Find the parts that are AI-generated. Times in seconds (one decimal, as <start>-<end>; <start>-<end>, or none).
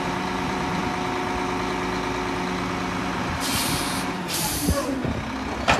0.0-0.8; 3.0-5.0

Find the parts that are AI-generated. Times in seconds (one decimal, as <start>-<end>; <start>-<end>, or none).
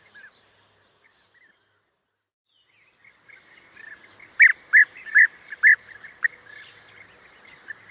4.5-6.3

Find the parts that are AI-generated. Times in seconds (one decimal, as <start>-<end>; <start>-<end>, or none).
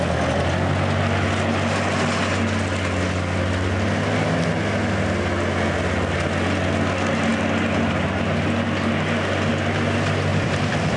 10.3-11.0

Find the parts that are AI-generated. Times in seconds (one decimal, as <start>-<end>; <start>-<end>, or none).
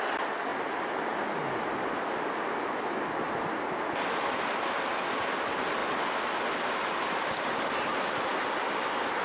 none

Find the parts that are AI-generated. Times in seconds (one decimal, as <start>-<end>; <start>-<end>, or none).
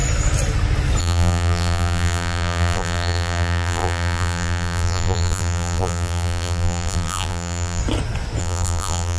1.0-7.8; 8.4-9.2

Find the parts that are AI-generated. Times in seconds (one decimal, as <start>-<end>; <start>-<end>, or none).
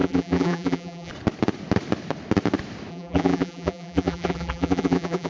0.0-1.1; 2.9-5.3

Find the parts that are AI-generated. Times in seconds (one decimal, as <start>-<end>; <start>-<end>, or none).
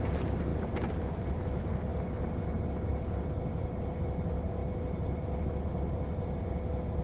0.5-1.0; 2.9-3.7